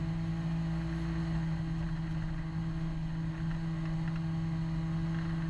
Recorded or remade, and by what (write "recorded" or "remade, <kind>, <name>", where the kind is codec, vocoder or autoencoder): recorded